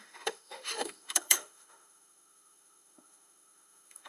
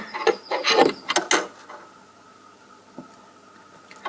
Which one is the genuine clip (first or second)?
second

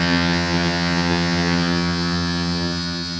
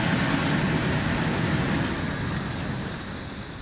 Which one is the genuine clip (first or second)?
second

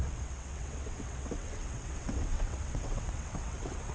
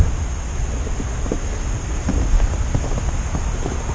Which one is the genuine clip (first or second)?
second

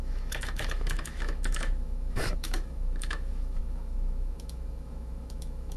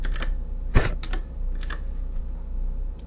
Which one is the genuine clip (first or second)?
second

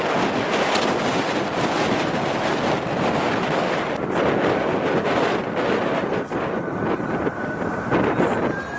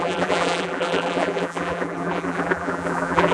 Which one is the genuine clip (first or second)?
first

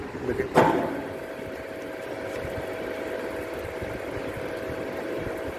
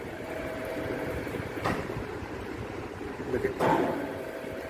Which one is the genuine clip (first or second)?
first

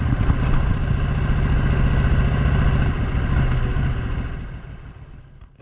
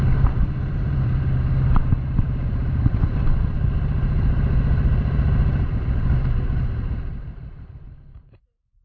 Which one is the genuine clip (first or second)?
first